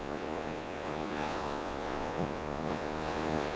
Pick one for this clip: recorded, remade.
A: remade